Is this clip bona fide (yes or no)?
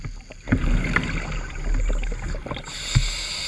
yes